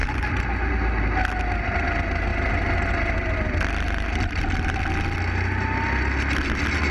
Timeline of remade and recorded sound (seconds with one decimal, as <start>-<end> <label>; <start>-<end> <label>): 0.0-6.9 recorded

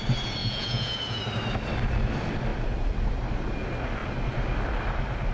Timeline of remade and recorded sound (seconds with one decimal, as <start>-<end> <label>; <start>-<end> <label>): 0.0-0.4 recorded; 0.4-1.2 remade; 1.2-5.3 recorded

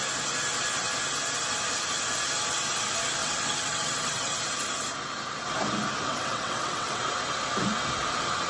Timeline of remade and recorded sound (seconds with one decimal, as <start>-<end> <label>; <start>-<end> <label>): 0.0-3.2 recorded; 3.2-4.4 remade; 4.4-6.1 recorded; 6.1-7.0 remade; 7.0-8.5 recorded

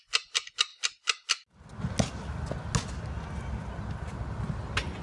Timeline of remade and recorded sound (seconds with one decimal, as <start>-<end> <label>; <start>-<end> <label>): 0.0-5.0 recorded